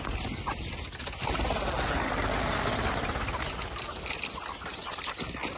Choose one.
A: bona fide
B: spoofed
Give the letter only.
A